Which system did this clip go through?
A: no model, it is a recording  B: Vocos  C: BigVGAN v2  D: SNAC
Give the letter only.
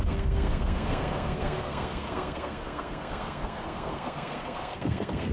D